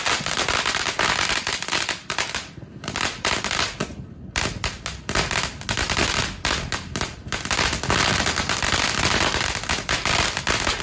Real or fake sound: real